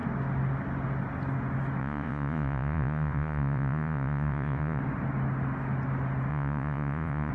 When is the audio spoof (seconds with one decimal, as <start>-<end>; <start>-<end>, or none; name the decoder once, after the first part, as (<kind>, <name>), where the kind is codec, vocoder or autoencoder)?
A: 1.8-4.8 (vocoder, Vocos); 6.3-7.3